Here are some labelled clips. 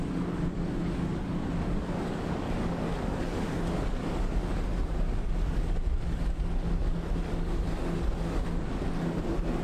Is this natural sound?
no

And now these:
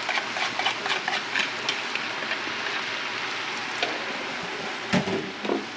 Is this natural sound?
yes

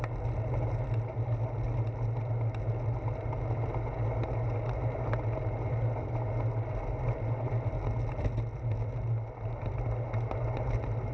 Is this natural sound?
yes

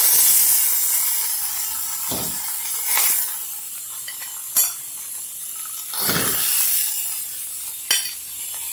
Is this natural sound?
yes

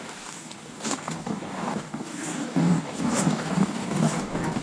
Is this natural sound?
no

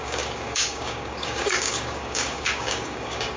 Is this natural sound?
no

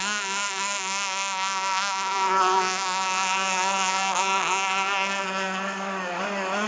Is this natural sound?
no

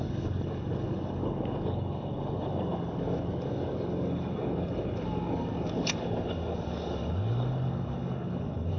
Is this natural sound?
no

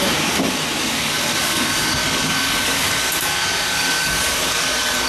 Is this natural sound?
no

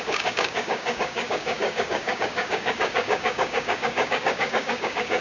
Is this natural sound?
no